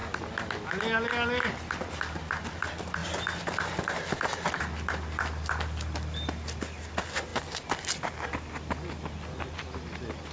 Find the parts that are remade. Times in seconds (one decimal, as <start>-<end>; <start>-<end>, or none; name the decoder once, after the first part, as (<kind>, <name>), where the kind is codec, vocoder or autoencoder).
none